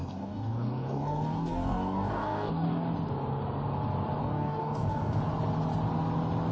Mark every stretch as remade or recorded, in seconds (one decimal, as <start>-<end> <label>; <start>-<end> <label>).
0.0-2.9 remade; 2.9-4.2 recorded; 4.2-5.2 remade; 5.2-6.5 recorded